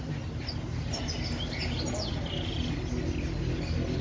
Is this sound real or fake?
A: real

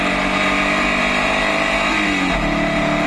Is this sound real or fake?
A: real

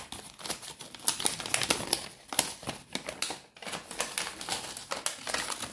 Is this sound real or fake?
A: real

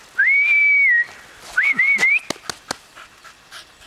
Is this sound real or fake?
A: real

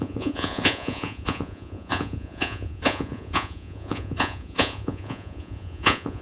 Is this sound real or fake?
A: fake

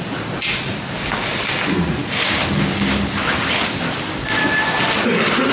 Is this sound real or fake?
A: real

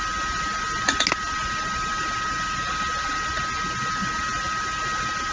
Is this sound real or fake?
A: real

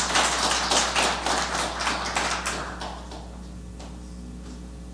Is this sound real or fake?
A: real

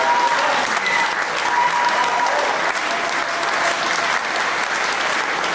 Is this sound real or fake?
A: real